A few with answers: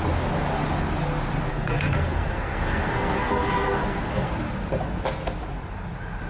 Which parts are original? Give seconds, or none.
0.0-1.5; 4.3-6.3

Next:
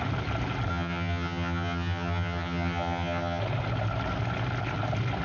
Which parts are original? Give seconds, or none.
0.0-0.7; 3.4-5.2

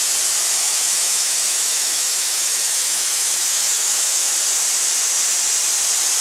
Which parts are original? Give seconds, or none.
0.0-0.6; 4.3-6.2

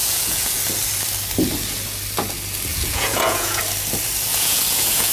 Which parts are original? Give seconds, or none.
0.6-2.7; 3.6-4.3

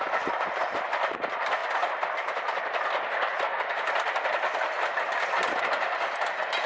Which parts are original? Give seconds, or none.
0.0-6.7